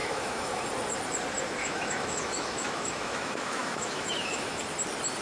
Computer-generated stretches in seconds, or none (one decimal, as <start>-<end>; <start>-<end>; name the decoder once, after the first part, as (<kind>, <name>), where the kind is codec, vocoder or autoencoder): 0.0-0.6 (autoencoder, DAC-VAE); 1.6-4.6